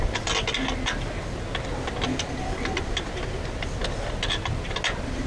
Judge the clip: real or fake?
real